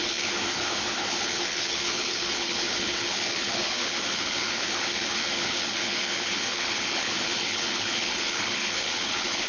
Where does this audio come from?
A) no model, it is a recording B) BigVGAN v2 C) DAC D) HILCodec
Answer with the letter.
D